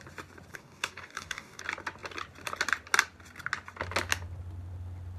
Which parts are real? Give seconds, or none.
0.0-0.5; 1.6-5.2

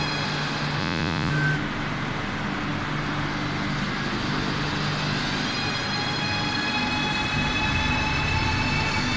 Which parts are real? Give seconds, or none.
0.0-0.8; 1.3-9.2